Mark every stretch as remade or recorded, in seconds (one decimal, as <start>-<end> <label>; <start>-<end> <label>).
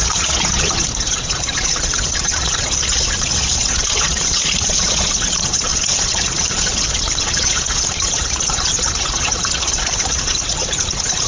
0.0-11.3 remade